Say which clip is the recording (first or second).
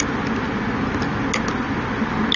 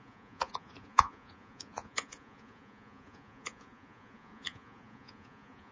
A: first